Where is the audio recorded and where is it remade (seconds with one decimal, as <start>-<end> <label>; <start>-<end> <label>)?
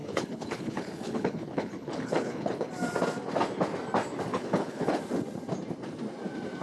0.0-2.7 remade; 2.7-4.3 recorded; 4.3-5.0 remade; 5.0-6.6 recorded